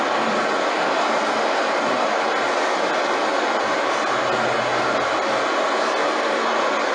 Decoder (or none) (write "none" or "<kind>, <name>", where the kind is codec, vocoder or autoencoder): none